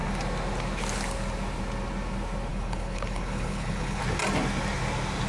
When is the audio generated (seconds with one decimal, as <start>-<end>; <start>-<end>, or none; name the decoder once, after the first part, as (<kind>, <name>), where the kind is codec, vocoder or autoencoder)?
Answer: 2.5-4.0 (codec, HILCodec)